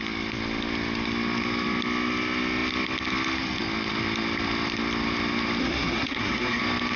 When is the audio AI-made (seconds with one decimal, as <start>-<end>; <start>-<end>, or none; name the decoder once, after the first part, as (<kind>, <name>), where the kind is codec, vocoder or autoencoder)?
5.6-6.6 (codec, SNAC)